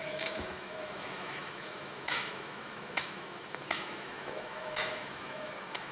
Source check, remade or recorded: remade